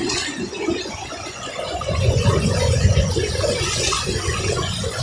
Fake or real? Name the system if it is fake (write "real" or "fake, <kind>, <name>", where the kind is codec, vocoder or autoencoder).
fake, vocoder, Vocos